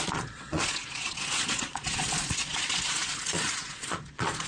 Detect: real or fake fake